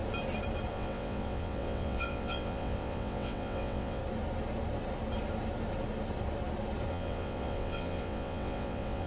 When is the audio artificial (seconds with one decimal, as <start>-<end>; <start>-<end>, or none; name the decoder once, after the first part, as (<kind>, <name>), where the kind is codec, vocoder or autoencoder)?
0.7-4.0 (vocoder, WaveNeXt); 6.9-9.1